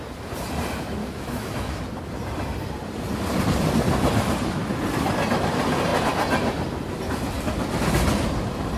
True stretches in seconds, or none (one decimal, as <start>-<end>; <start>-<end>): 0.0-1.0; 1.8-8.8